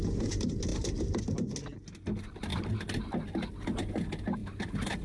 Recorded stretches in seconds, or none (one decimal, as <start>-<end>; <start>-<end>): 0.0-0.7; 1.2-5.0